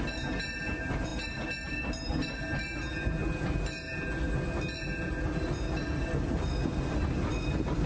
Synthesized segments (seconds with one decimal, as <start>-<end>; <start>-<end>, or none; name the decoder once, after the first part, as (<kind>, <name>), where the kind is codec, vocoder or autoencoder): none